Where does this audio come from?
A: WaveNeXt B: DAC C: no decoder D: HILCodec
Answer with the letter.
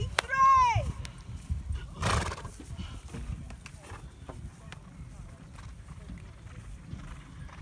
C